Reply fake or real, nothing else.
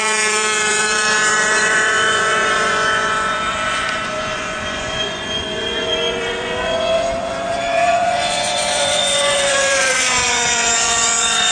fake